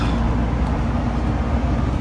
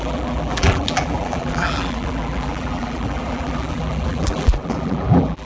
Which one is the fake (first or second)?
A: second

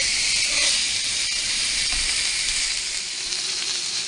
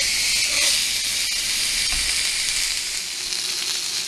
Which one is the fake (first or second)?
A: first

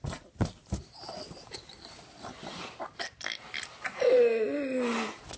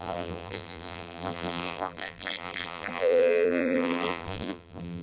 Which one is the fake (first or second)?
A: second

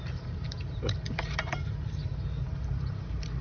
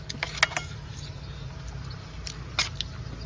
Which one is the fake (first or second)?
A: first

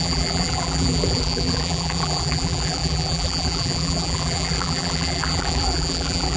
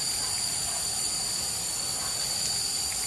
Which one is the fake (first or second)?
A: first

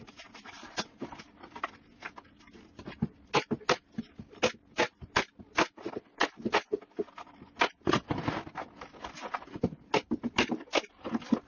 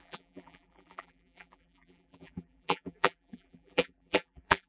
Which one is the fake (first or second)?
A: second